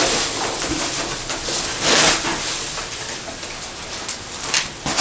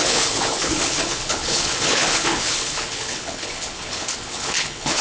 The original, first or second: first